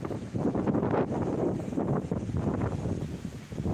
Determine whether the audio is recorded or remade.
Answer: recorded